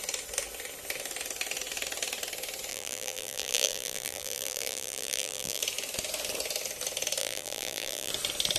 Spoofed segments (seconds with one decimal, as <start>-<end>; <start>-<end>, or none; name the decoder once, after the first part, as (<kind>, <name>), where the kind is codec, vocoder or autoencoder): 2.7-5.6 (vocoder, BigVGAN v2); 7.2-8.1